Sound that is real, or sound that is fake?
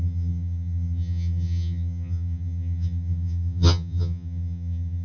fake